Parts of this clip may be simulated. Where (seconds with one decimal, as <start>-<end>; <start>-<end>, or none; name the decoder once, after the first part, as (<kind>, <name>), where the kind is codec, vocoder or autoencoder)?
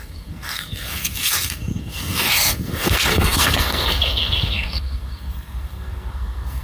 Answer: 0.0-6.6 (codec, SNAC)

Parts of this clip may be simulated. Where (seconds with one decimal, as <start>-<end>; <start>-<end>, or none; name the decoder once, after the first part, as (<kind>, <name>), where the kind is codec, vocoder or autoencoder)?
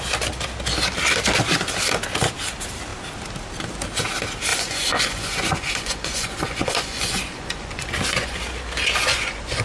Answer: 4.5-8.4 (vocoder, Vocos); 9.1-9.6